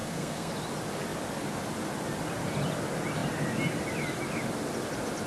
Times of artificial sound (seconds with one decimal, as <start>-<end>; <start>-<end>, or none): 0.0-0.5